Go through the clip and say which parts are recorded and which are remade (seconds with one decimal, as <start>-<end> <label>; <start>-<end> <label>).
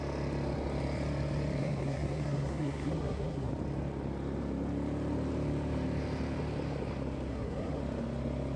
0.0-1.6 recorded; 1.6-3.5 remade; 3.5-7.3 recorded; 7.3-7.8 remade; 7.8-8.6 recorded